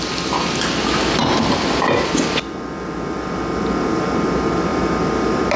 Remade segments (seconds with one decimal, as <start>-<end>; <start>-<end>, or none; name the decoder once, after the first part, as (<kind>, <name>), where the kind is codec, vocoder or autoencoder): none